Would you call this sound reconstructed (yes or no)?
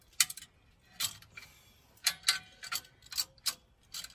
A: no